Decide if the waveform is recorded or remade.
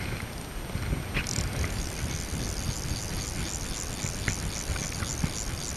recorded